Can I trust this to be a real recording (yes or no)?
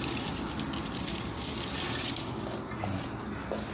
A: yes